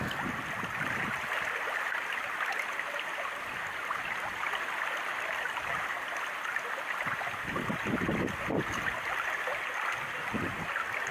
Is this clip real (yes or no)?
yes